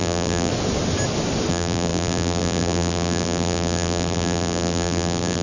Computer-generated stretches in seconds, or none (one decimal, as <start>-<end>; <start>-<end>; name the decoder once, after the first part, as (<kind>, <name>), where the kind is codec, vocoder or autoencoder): 0.0-0.5 (vocoder, BigVGAN v2); 1.5-5.4